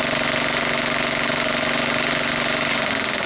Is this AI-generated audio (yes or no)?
no